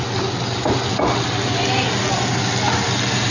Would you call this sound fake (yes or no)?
no